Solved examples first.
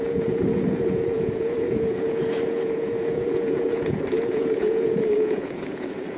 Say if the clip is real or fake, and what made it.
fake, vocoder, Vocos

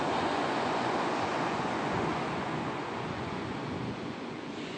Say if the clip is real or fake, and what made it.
fake, vocoder, Vocos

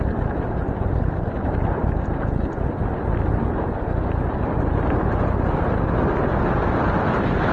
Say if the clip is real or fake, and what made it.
real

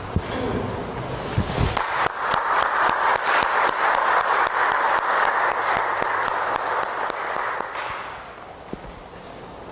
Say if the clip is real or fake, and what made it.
real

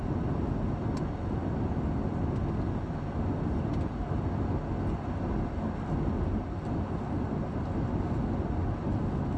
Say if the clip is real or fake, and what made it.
real